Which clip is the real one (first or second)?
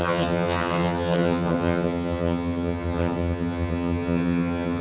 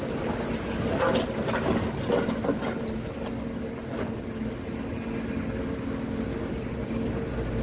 second